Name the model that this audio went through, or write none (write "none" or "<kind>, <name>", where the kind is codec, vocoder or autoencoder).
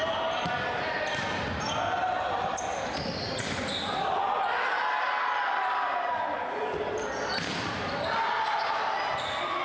none